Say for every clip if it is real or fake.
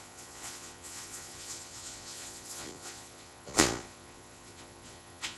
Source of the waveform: fake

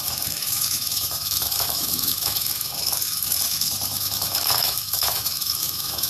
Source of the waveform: fake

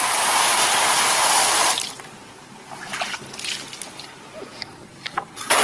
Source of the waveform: real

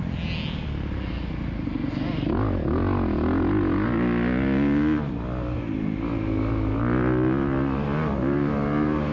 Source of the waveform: real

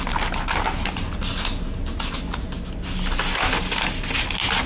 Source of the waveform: real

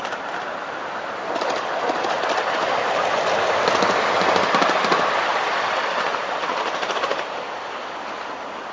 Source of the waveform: fake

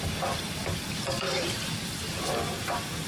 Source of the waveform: real